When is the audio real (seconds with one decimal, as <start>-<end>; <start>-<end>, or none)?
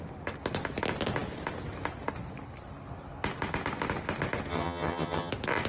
0.0-4.5; 5.3-5.7